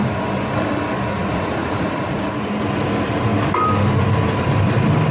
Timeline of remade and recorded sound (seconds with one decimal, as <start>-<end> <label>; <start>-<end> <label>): 0.0-1.1 recorded; 1.1-2.2 remade; 2.2-5.1 recorded